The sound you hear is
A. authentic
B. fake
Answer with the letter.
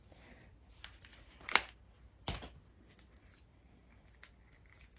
A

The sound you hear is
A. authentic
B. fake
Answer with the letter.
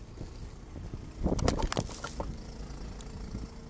A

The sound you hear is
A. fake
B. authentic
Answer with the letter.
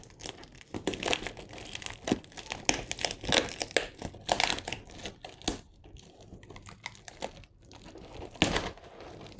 B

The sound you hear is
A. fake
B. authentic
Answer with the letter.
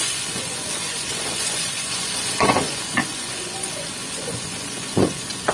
A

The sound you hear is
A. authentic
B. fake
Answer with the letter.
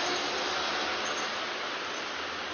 A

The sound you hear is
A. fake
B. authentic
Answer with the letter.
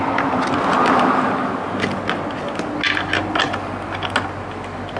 B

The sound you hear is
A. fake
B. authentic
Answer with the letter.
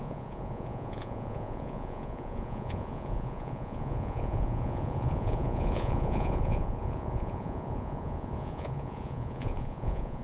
A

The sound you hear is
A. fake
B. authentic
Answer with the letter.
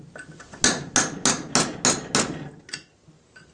B